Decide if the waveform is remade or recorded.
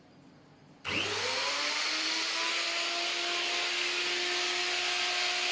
recorded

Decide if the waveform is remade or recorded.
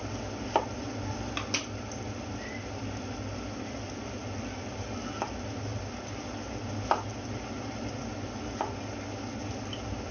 recorded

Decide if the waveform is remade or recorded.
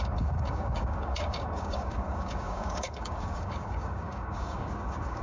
remade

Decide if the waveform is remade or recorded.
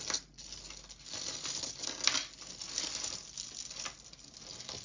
recorded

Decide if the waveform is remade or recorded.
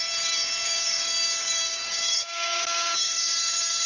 remade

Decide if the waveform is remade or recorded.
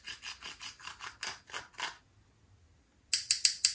recorded